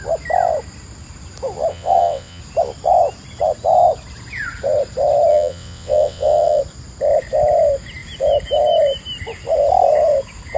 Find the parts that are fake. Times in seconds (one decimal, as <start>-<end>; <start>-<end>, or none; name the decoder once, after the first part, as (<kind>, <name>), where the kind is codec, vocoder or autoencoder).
1.7-2.4 (vocoder, WaveNeXt); 5.3-6.6